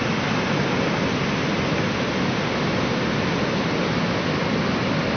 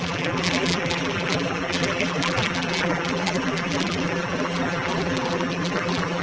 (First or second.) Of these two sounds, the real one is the first